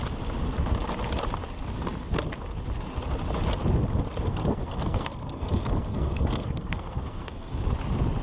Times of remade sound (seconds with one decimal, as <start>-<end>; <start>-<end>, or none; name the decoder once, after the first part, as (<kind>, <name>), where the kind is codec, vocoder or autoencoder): 4.3-7.5 (codec, SNAC)